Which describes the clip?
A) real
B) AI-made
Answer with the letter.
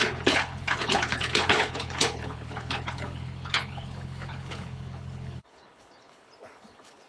B